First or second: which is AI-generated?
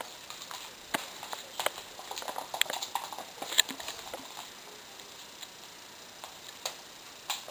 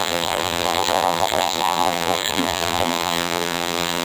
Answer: second